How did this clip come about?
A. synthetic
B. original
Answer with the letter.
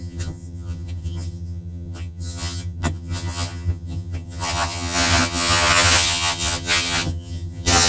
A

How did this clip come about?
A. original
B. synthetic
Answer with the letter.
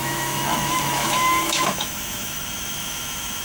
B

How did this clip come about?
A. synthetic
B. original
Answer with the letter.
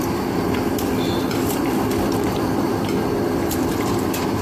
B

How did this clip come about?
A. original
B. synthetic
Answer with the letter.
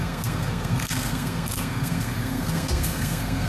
B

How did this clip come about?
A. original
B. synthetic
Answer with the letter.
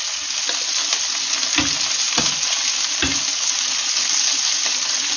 A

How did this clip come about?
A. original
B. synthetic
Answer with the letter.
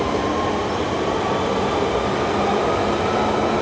A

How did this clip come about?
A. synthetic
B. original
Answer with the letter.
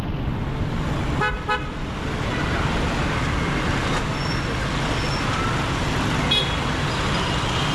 B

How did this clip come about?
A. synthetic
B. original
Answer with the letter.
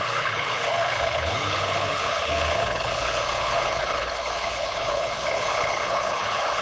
A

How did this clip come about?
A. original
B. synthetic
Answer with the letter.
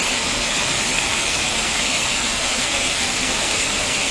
B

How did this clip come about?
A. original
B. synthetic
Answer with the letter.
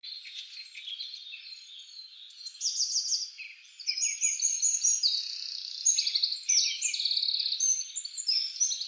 A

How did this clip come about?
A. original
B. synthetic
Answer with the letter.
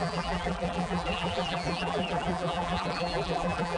B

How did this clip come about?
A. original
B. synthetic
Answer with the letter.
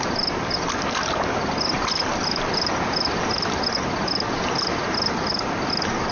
A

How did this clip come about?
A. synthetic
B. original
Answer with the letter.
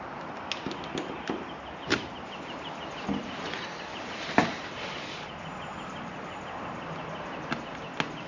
B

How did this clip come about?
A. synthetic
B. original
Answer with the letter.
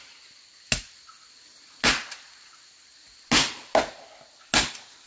B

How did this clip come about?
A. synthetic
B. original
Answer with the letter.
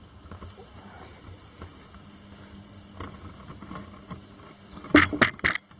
B